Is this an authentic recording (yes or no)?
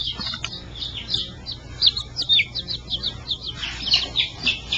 yes